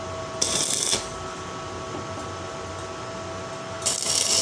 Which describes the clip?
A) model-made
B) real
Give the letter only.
B